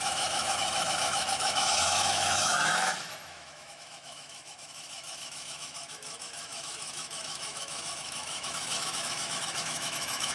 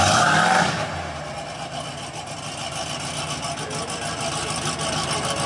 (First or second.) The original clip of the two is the second